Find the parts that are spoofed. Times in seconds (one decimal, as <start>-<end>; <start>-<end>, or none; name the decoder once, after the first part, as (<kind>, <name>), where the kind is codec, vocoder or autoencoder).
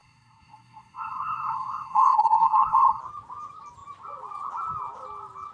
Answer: 0.0-3.0 (codec, SNAC)